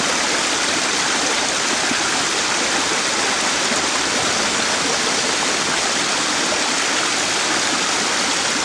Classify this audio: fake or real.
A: real